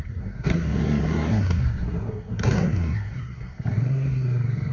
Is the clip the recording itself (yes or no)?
no